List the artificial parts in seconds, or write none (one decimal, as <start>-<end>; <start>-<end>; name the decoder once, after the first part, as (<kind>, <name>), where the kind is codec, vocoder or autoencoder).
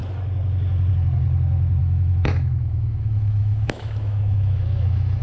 1.8-5.2 (autoencoder, DAC-VAE)